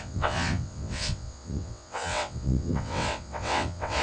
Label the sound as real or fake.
fake